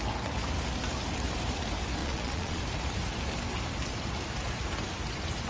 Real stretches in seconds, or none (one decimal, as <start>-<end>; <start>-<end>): 0.0-2.0; 2.6-5.5